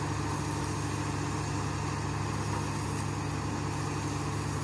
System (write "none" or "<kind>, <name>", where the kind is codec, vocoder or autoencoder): none